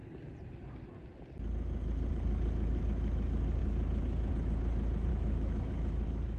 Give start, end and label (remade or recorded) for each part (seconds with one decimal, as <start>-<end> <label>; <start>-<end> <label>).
0.0-5.1 recorded; 5.1-6.4 remade